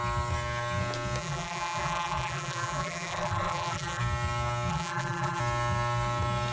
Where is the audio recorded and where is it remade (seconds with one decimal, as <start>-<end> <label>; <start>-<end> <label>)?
0.0-1.2 recorded; 1.2-4.0 remade; 4.0-4.7 recorded; 4.7-5.4 remade; 5.4-6.5 recorded